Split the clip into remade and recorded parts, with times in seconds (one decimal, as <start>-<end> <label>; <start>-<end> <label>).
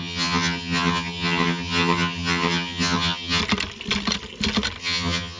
0.0-3.4 remade; 3.4-4.8 recorded; 4.8-5.4 remade